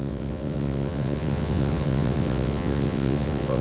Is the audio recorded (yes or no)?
no